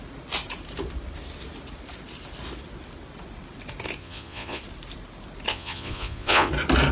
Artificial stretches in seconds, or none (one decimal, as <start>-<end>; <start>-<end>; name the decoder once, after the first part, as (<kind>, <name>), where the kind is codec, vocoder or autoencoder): 4.0-4.6 (vocoder, Vocos); 5.5-6.5